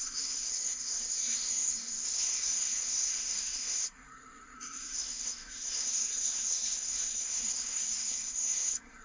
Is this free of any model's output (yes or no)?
no